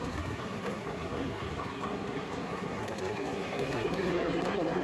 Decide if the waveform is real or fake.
fake